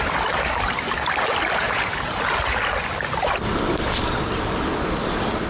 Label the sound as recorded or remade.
recorded